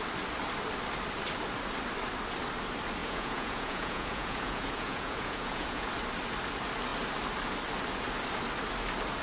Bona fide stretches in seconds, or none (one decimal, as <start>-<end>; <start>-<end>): 0.0-3.0; 5.9-9.2